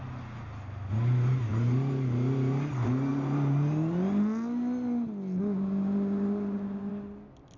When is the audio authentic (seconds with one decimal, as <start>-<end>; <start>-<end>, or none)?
0.0-7.6